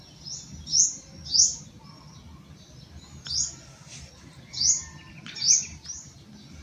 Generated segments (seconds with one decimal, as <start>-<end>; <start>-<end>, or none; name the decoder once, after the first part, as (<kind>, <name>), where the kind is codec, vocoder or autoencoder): none